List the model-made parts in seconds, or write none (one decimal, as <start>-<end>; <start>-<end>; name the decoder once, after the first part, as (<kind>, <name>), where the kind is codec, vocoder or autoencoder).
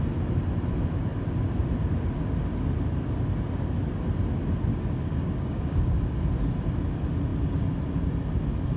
4.7-6.2 (codec, DAC)